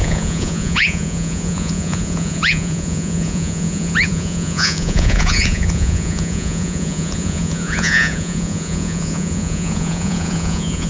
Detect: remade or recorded remade